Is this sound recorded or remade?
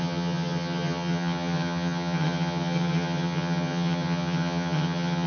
remade